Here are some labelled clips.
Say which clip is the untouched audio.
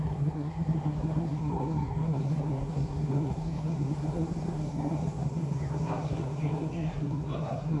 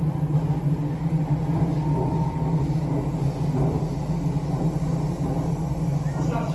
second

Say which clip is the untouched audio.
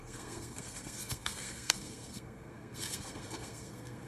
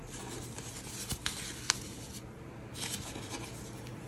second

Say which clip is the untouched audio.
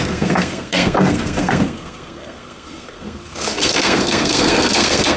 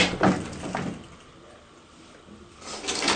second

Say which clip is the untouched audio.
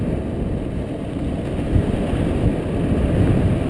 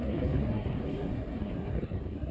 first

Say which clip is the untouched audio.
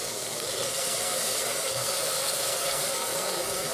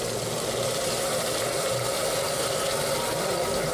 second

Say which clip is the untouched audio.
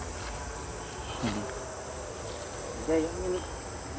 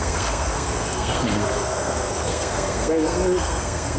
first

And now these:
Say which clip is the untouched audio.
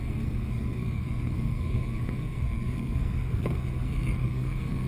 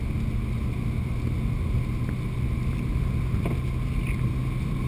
second